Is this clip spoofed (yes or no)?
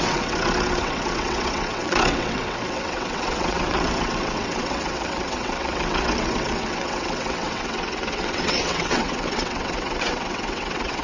yes